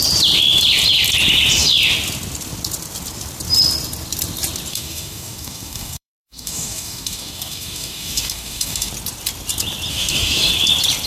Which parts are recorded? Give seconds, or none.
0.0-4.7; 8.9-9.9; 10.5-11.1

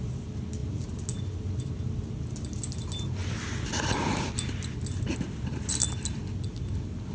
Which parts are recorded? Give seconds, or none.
0.0-7.1

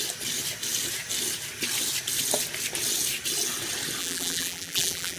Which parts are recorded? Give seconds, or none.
0.0-4.0

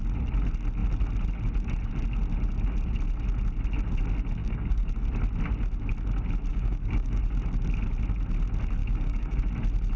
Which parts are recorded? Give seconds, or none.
0.0-4.4; 4.9-6.5; 7.2-8.8; 9.4-10.0

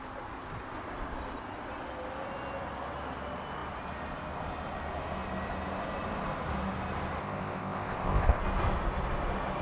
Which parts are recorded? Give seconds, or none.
0.0-7.2; 8.4-9.6